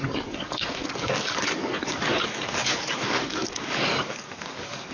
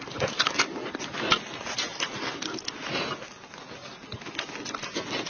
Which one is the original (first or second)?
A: second